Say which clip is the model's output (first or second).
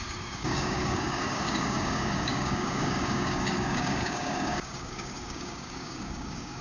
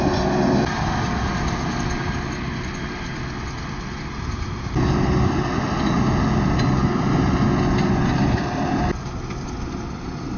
first